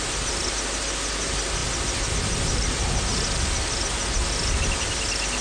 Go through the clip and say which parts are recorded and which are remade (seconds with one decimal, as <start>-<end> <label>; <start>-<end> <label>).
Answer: 0.0-5.4 recorded